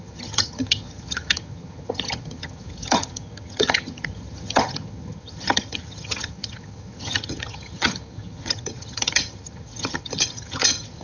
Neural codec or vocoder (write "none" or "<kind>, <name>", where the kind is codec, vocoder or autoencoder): vocoder, HiFi-GAN